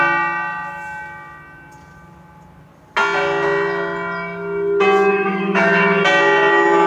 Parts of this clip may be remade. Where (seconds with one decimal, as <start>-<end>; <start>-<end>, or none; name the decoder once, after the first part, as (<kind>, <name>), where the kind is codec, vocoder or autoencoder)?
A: 5.1-6.0 (codec, DAC)